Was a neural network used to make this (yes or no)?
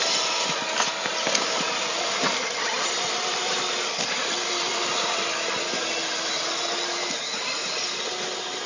no